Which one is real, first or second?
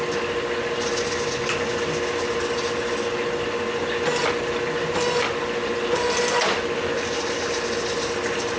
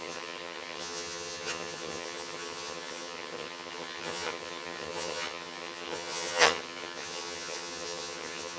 first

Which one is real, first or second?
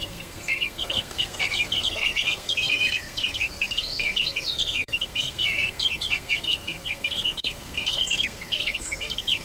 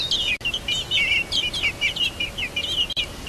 second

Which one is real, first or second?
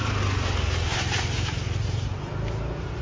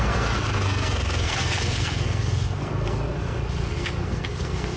first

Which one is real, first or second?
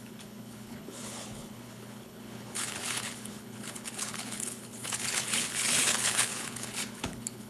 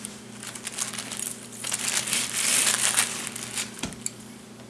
second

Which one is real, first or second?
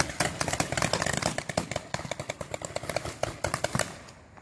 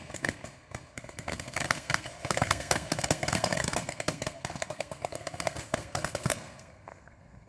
first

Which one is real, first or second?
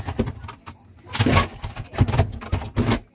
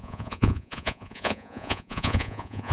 first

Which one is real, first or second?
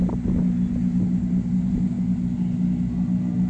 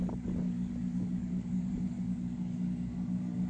first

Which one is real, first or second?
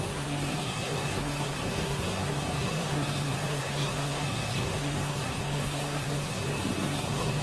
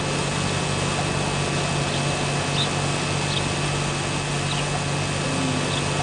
second